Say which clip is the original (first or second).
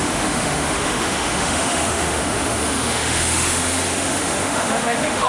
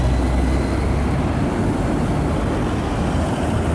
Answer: second